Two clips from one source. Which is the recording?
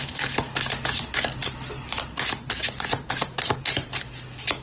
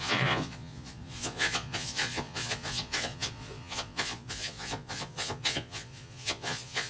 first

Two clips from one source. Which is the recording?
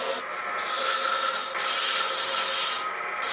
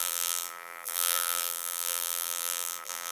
first